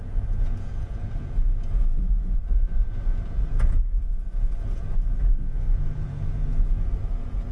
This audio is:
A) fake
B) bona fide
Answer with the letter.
A